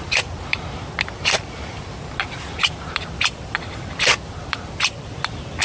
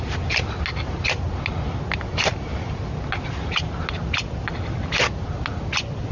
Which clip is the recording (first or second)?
second